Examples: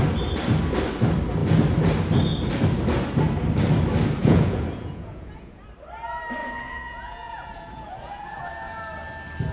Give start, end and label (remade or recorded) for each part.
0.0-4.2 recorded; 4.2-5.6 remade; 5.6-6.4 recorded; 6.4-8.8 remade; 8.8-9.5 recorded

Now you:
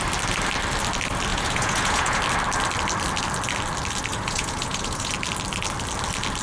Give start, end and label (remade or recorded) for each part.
0.0-1.3 recorded; 1.3-2.2 remade; 2.2-4.1 recorded; 4.1-5.1 remade; 5.1-6.4 recorded

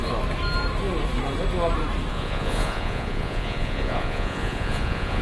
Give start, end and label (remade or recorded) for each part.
0.0-2.1 recorded; 2.1-5.2 remade